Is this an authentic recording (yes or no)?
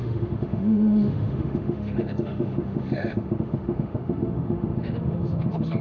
no